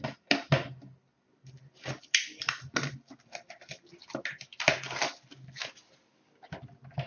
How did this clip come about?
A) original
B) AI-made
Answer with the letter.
A